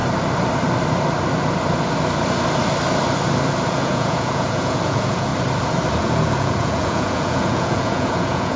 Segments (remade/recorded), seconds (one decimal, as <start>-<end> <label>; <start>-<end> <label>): 0.0-3.7 recorded; 3.7-5.3 remade; 5.3-6.0 recorded; 6.0-8.6 remade